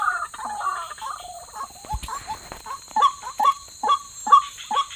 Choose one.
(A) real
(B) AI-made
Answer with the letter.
A